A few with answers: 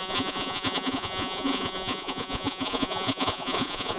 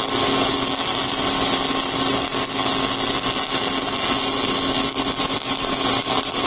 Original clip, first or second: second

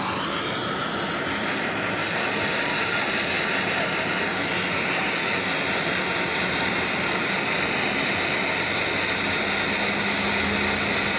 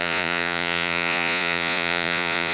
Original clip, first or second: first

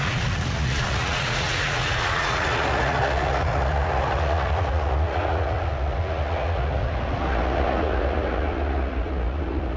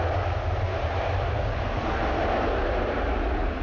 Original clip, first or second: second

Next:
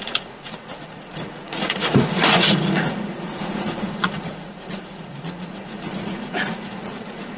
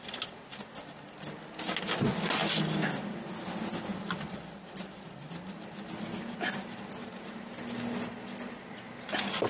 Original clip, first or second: second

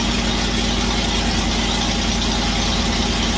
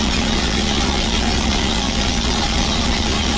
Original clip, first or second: first